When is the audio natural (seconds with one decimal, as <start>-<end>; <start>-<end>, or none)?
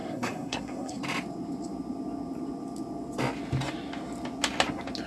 1.0-5.1